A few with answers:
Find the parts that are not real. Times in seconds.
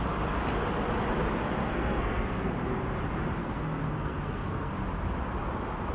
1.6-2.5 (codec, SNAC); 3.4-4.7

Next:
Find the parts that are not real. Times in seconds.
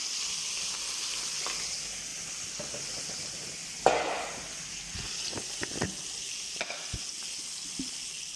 none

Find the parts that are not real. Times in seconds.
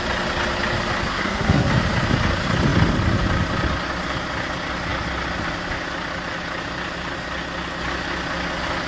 1.1-1.7 (codec, SNAC)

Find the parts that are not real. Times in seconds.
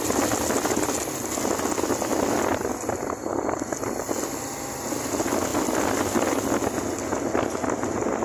none